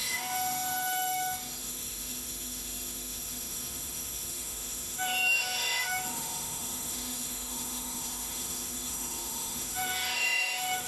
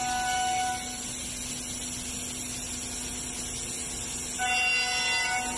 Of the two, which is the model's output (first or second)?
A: first